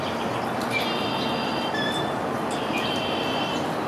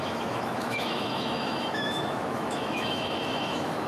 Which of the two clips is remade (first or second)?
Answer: second